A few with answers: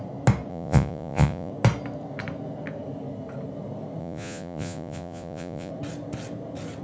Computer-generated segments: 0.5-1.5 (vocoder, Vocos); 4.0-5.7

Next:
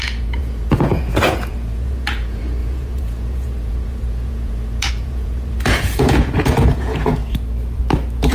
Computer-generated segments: 0.0-7.2 (vocoder, Vocos)

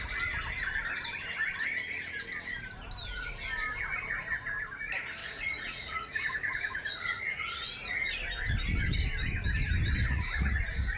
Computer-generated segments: 5.2-8.1 (vocoder, Vocos); 10.0-11.0

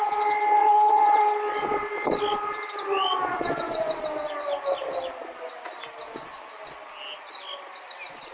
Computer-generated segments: 0.6-1.2 (vocoder, Vocos); 3.1-4.0

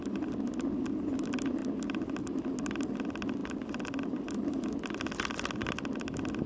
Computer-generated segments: none

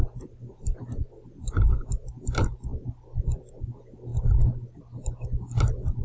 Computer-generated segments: none

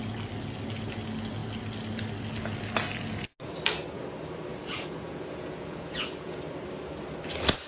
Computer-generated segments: 4.5-6.4 (vocoder, Vocos)

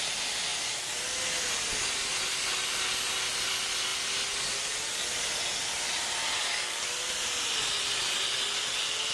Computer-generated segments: none